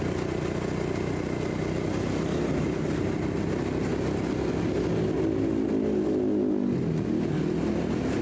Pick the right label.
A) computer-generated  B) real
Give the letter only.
B